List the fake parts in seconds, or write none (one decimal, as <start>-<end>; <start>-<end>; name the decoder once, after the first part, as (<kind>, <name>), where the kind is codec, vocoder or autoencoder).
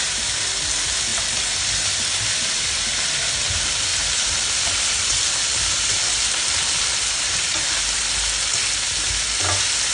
3.9-4.5 (vocoder, BigVGAN v2); 5.5-8.0